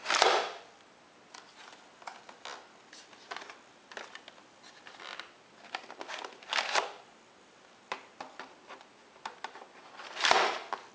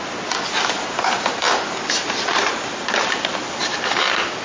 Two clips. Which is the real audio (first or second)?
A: first